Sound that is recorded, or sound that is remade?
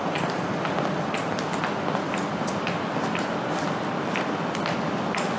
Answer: recorded